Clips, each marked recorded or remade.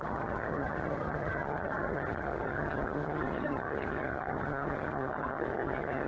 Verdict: remade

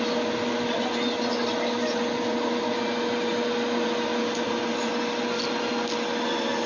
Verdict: recorded